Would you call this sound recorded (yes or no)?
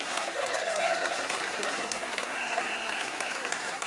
no